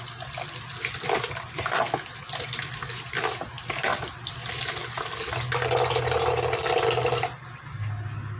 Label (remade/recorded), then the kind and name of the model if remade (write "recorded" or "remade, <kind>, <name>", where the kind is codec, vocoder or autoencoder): recorded